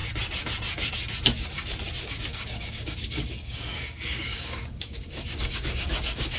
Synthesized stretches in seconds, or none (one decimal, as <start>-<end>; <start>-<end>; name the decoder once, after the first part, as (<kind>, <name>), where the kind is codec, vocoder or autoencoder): 2.1-6.4 (codec, DAC)